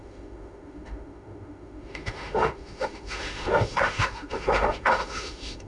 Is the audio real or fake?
fake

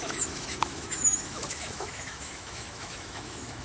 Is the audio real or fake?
fake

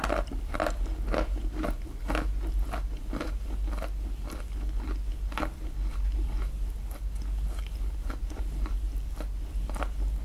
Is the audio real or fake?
real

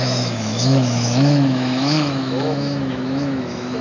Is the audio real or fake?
fake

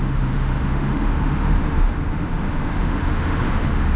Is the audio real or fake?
fake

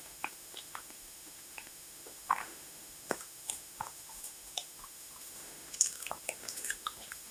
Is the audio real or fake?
fake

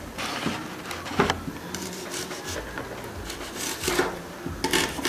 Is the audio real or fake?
real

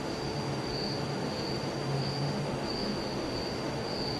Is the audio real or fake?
fake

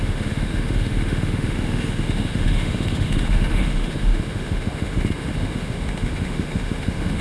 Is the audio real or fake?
fake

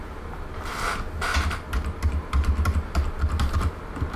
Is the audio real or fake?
real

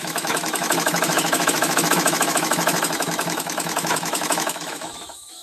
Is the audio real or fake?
fake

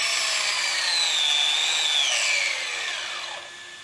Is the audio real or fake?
real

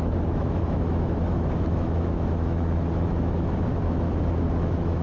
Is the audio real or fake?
fake